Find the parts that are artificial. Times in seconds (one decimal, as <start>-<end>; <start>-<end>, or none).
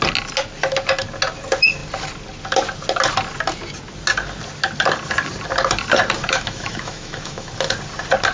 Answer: 6.2-7.5